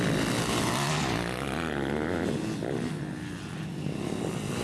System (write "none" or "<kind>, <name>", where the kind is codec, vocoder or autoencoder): none